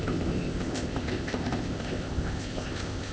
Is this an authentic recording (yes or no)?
no